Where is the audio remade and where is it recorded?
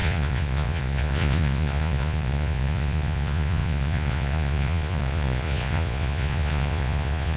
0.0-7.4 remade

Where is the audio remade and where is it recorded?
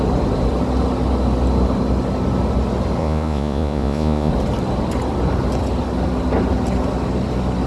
0.0-3.0 recorded; 3.0-4.3 remade; 4.3-7.7 recorded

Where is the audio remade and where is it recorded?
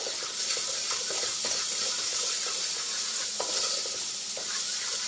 0.0-2.1 recorded; 2.1-3.5 remade; 3.5-5.1 recorded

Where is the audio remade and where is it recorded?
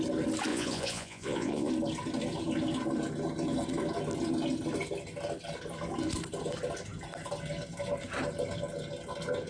0.0-0.5 recorded; 0.5-1.7 remade; 1.7-9.5 recorded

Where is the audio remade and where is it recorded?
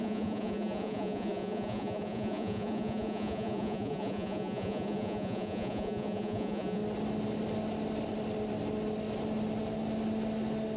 0.0-6.8 remade; 6.8-10.8 recorded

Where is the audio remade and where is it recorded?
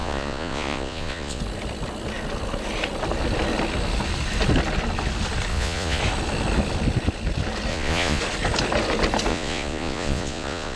0.0-1.4 remade; 1.4-5.5 recorded; 5.5-6.0 remade; 6.0-7.7 recorded; 7.7-8.2 remade; 8.2-9.3 recorded; 9.3-10.8 remade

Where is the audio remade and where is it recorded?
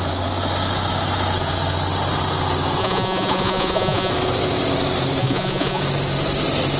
0.0-2.8 recorded; 2.8-4.1 remade; 4.1-5.2 recorded; 5.2-5.8 remade; 5.8-6.8 recorded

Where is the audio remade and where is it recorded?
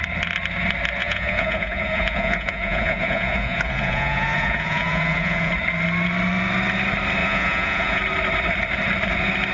0.0-1.0 recorded; 1.0-5.5 remade; 5.5-7.2 recorded; 7.2-8.0 remade; 8.0-9.5 recorded